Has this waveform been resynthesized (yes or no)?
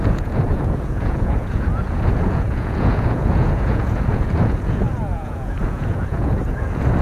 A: yes